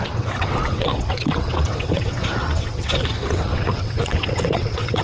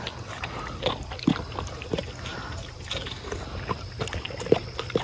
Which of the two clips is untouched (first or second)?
second